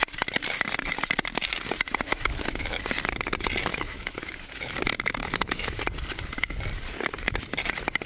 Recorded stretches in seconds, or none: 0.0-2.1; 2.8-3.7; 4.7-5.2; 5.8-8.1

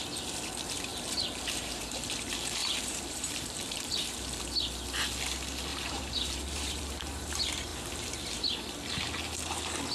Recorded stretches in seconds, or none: 0.0-0.9; 1.8-2.6; 4.4-5.7; 7.3-9.9

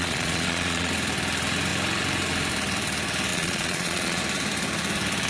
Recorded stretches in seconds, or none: 0.9-3.3; 4.2-5.3

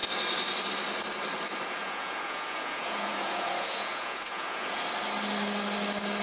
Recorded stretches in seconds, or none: 0.0-1.8; 4.8-6.2

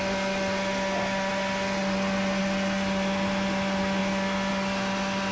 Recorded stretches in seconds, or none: 0.0-5.3